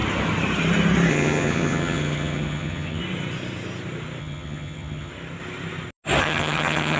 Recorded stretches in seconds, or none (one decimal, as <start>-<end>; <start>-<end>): 0.0-1.1; 3.0-4.2; 5.1-6.2

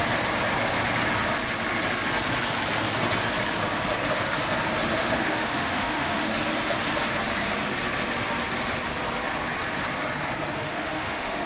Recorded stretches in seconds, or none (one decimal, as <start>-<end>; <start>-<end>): 0.0-4.9; 6.3-10.6

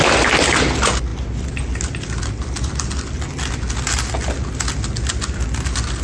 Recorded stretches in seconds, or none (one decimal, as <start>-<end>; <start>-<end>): 0.0-6.0

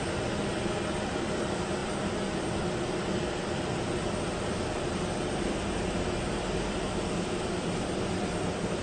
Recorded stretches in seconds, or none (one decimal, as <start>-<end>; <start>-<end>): 0.0-8.8

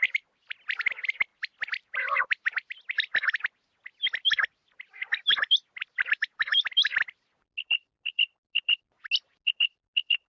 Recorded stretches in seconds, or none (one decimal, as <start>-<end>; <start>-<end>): 0.0-10.3

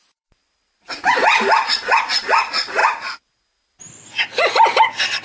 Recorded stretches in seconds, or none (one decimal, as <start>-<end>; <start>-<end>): 2.8-3.8

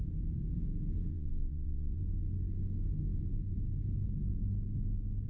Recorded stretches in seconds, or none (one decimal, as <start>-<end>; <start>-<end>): 0.0-1.1; 2.0-5.3

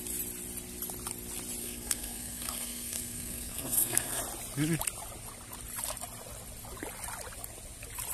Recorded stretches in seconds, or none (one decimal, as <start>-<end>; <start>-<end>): 0.0-1.6; 4.2-8.1